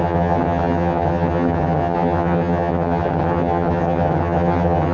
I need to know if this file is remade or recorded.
remade